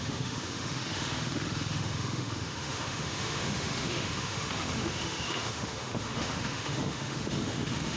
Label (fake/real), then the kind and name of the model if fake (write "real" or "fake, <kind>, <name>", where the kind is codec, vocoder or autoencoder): fake, autoencoder, DAC-VAE